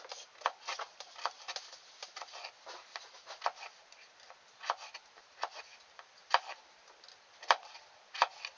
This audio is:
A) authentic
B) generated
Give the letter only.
A